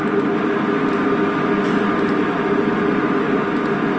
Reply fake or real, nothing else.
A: real